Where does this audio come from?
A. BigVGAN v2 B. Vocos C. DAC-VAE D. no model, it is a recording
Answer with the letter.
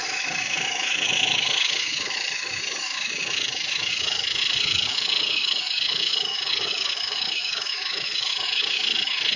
C